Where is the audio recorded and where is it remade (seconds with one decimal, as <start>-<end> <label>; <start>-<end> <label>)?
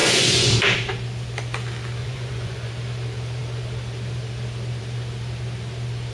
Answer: 0.0-0.5 remade; 0.5-2.0 recorded; 2.0-2.7 remade; 2.7-6.1 recorded